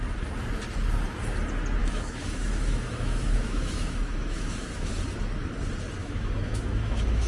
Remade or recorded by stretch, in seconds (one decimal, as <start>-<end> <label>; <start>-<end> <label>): 0.0-1.8 recorded; 1.8-4.9 remade; 4.9-6.0 recorded; 6.0-7.3 remade